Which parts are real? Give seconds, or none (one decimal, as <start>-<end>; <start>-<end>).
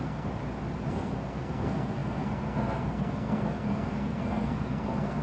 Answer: 0.4-0.9